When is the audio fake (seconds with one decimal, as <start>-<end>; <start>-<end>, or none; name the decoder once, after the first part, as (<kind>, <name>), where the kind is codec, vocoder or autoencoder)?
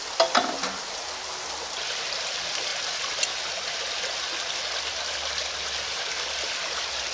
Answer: none